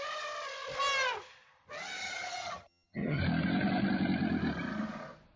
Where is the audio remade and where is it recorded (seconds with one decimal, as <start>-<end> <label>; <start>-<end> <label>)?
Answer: 0.0-2.0 recorded; 2.0-3.2 remade; 3.2-5.4 recorded